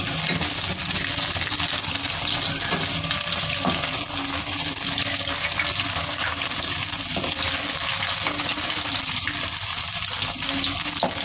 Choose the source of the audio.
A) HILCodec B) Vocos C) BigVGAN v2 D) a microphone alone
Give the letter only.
D